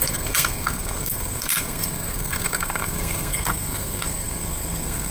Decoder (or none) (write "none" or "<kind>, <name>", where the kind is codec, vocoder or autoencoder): codec, SNAC